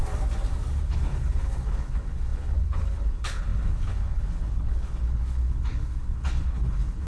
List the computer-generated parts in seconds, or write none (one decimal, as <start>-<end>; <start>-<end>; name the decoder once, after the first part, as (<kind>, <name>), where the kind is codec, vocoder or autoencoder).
0.8-7.1 (codec, HILCodec)

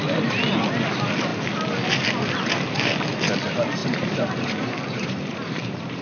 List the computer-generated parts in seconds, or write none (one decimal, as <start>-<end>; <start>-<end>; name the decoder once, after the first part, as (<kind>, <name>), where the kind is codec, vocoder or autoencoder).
3.8-6.0 (vocoder, BigVGAN v2)

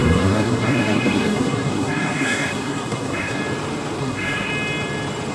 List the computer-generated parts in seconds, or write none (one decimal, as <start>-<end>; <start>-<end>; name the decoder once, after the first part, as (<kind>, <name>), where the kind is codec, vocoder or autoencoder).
0.0-3.4 (codec, SNAC); 4.0-4.5